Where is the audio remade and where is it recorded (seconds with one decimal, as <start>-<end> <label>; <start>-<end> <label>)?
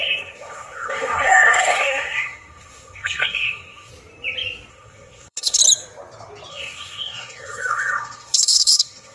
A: 0.0-3.9 remade; 3.9-4.7 recorded; 4.7-5.6 remade; 5.6-6.5 recorded; 6.5-9.1 remade